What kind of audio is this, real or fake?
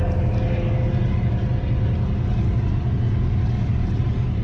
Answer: real